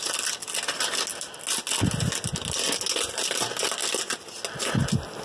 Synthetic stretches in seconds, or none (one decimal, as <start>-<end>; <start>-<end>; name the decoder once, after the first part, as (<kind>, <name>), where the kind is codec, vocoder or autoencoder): none